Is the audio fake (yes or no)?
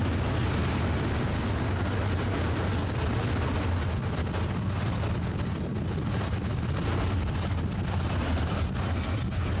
no